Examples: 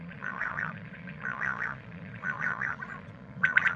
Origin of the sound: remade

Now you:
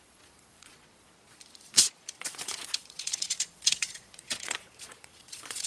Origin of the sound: remade